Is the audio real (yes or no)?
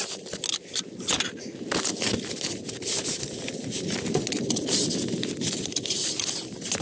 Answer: yes